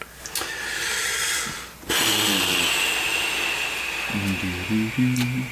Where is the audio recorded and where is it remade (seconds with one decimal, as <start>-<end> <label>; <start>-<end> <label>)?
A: 0.0-5.5 recorded